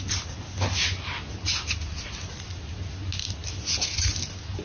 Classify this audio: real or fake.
real